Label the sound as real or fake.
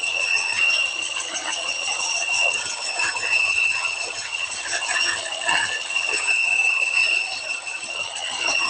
fake